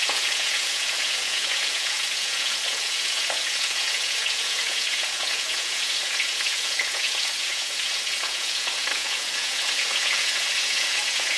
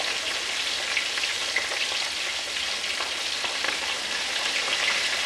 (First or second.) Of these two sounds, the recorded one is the second